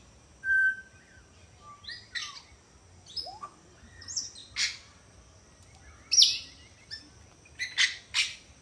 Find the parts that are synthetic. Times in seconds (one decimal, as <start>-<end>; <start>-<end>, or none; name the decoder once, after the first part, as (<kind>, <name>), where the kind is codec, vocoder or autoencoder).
none